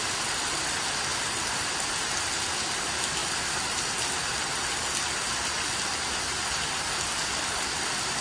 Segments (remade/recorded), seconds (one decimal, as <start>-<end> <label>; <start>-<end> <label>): 0.0-8.2 recorded